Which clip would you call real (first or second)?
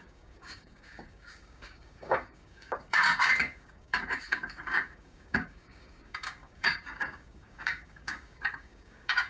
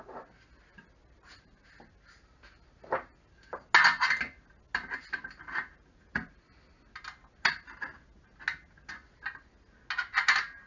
second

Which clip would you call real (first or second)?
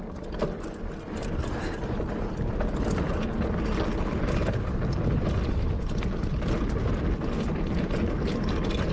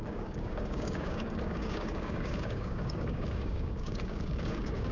first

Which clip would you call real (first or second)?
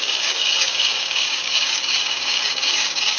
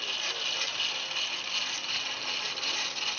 second